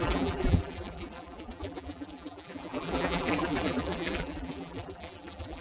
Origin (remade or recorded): remade